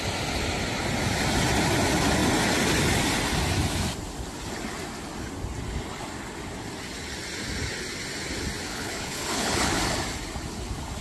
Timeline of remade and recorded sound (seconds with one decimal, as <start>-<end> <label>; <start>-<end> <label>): 0.0-8.7 recorded; 8.7-9.8 remade; 9.8-11.0 recorded